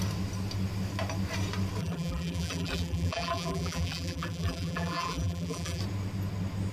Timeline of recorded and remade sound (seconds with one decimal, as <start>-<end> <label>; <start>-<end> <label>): 0.0-1.8 recorded; 1.8-5.8 remade; 5.8-6.7 recorded

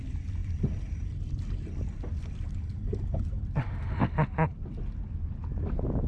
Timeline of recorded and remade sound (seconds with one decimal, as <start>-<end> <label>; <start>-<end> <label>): 0.0-6.1 recorded

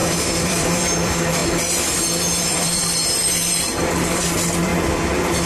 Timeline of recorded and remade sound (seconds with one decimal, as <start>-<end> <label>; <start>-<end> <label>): 0.0-1.4 remade; 1.4-2.4 recorded; 2.4-2.8 remade; 2.8-3.9 recorded; 3.9-4.7 remade; 4.7-5.5 recorded

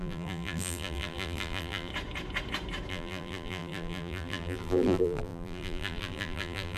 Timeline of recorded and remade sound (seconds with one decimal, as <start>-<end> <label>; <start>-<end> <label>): 0.0-1.9 remade; 1.9-2.9 recorded; 2.9-6.8 remade

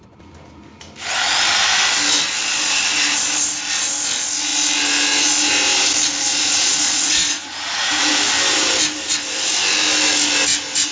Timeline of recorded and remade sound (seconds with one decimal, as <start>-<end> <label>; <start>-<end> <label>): 0.0-6.3 recorded; 6.3-8.1 remade; 8.1-10.9 recorded

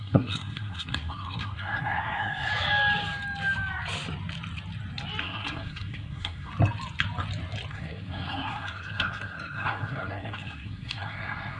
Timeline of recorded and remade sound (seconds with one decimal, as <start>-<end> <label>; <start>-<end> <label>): 0.0-2.5 remade; 2.5-5.2 recorded; 5.2-6.5 remade; 6.5-7.7 recorded; 7.7-11.6 remade

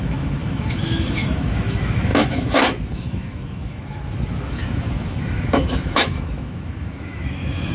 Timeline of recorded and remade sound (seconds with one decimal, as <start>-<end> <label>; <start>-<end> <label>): 0.0-7.7 remade

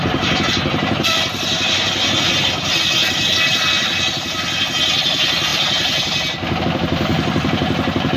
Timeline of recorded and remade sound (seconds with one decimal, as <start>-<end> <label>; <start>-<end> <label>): 0.0-8.2 recorded